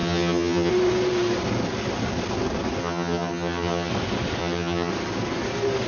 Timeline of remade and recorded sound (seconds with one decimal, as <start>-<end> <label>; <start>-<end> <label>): 0.0-0.7 remade; 0.7-2.8 recorded; 2.8-3.9 remade; 3.9-4.4 recorded; 4.4-4.9 remade; 4.9-5.9 recorded